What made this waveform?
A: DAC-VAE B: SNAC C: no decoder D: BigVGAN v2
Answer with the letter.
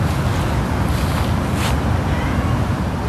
C